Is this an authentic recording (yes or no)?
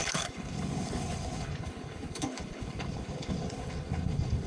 no